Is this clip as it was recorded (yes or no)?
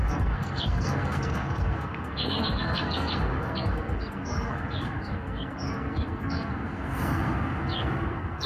no